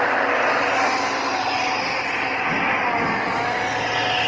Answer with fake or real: real